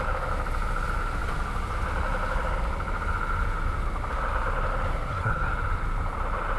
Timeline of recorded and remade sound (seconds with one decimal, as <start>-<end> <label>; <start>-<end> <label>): 0.0-4.9 recorded; 4.9-5.5 remade; 5.5-6.6 recorded